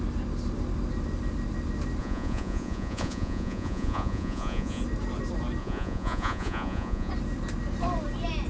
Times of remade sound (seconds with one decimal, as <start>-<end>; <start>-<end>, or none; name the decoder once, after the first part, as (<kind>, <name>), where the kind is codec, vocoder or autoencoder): 2.0-4.8 (vocoder, Vocos); 5.6-7.1